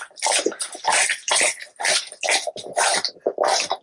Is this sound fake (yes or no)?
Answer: yes